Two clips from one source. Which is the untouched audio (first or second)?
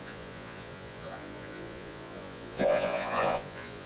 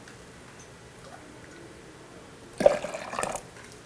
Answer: second